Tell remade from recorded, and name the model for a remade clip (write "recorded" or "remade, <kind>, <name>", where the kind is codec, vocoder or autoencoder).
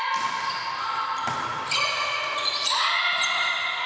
recorded